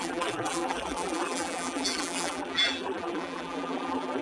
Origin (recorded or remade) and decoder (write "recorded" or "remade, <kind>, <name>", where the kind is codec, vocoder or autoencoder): remade, vocoder, BigVGAN v2